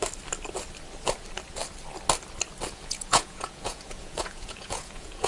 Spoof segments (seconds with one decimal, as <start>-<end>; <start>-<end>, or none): 2.7-5.3